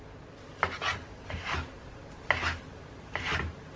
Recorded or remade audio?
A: recorded